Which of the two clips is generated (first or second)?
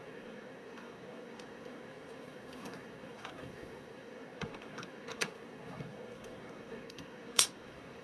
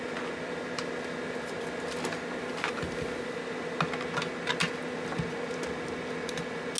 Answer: first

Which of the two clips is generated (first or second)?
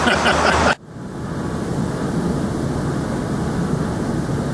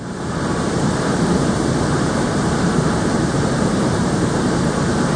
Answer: second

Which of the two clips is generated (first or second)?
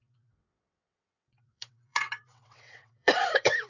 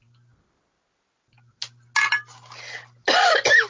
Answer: first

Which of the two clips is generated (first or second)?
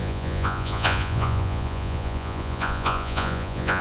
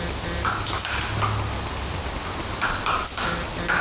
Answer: first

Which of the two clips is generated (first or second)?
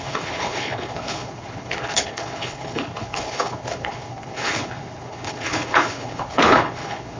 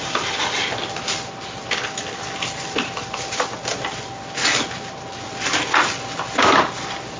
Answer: first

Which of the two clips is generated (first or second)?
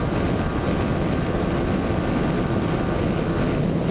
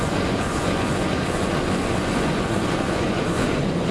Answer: second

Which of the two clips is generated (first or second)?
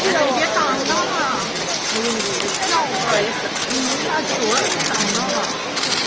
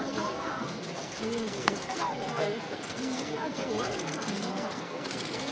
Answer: second